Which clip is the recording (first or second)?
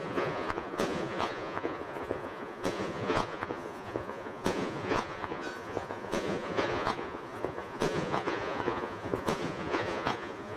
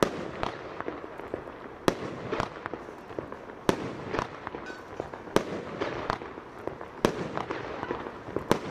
second